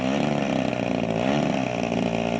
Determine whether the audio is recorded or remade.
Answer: recorded